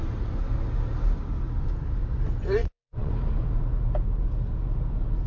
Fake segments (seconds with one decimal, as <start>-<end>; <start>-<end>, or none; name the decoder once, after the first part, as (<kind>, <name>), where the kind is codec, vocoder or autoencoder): 2.6-3.1 (vocoder, WaveNeXt)